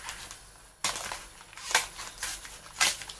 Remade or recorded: recorded